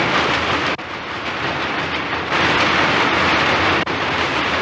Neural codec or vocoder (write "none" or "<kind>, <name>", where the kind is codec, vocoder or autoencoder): none